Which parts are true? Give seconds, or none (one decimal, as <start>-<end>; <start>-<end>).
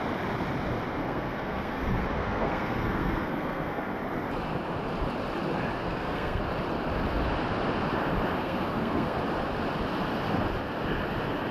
0.0-1.0; 4.0-5.8; 6.4-8.4; 9.2-11.5